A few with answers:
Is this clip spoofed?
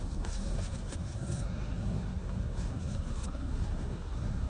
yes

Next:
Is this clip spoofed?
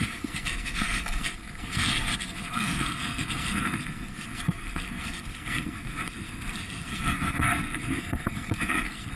yes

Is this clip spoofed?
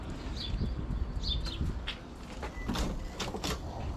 no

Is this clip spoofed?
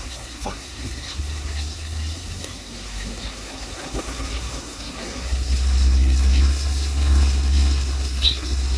yes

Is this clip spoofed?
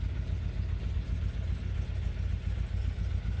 no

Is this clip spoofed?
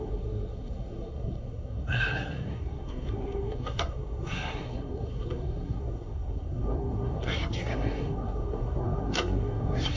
yes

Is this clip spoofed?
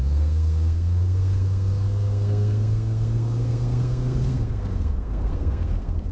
yes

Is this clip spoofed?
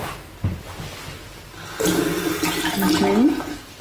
no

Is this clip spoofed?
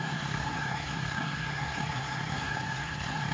yes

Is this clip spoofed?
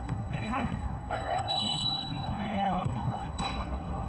yes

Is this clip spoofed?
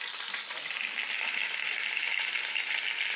no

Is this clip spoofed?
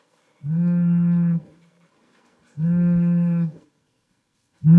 yes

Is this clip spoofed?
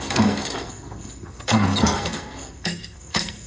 yes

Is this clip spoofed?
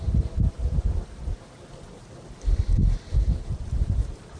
no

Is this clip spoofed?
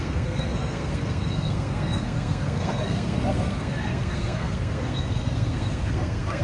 yes